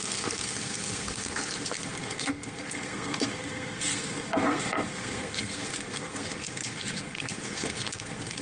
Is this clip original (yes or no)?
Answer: no